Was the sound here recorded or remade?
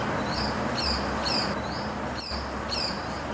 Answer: recorded